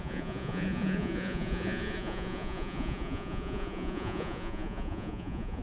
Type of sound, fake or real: fake